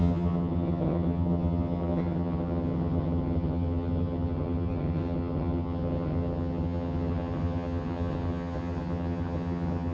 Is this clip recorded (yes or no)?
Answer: no